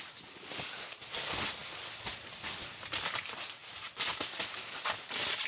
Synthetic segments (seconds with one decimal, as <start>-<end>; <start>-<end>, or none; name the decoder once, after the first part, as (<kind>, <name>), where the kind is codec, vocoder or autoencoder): none